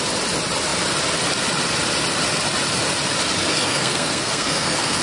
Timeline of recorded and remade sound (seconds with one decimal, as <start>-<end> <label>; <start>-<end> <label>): 0.0-3.5 recorded; 3.5-5.0 remade